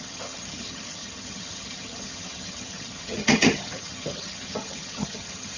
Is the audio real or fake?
fake